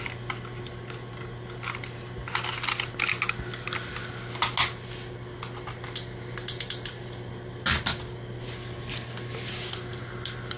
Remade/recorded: recorded